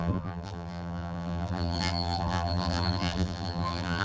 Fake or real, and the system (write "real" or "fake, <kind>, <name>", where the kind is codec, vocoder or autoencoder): fake, vocoder, BigVGAN v2